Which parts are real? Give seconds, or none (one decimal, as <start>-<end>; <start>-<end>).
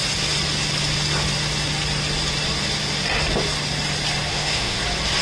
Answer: 0.0-4.3; 4.8-5.2